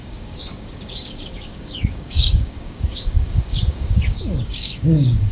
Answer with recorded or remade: remade